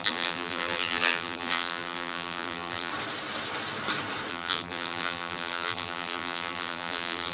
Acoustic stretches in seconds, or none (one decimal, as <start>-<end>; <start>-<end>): 2.9-4.3